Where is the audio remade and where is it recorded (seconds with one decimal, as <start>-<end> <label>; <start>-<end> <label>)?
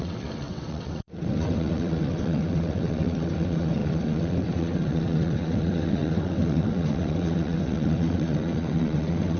0.0-9.4 remade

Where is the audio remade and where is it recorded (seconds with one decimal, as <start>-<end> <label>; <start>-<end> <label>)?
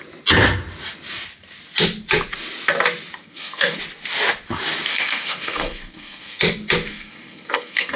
0.0-3.2 recorded; 3.2-3.8 remade; 3.8-4.9 recorded; 4.9-6.4 remade; 6.4-6.9 recorded; 6.9-8.0 remade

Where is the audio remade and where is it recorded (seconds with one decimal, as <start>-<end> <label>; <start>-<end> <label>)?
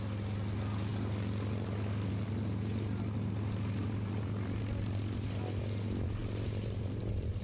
0.0-3.8 recorded; 3.8-4.6 remade; 4.6-6.2 recorded; 6.2-7.4 remade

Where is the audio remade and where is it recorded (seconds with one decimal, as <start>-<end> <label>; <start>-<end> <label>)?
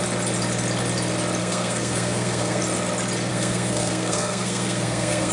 0.0-1.4 recorded; 1.4-2.6 remade; 2.6-3.3 recorded; 3.3-5.3 remade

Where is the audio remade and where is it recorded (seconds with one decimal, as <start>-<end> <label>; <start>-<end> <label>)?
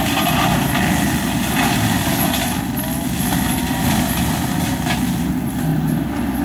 0.0-5.7 recorded; 5.7-6.4 remade